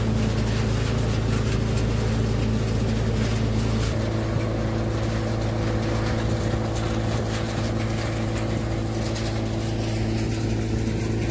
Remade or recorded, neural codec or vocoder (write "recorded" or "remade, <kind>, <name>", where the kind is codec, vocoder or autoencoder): recorded